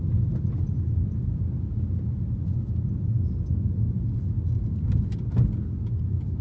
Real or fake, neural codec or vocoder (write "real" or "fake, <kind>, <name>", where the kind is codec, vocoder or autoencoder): real